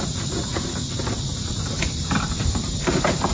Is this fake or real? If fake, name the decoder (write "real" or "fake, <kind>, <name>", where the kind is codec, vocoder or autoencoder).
fake, vocoder, BigVGAN v2